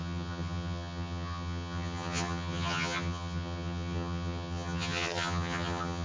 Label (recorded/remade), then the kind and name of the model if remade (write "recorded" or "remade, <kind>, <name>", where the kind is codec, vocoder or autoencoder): remade, vocoder, HiFi-GAN